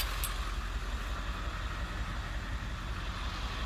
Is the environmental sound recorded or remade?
recorded